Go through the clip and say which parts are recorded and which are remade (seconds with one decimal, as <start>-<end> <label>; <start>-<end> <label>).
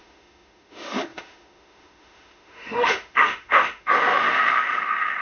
0.0-5.2 remade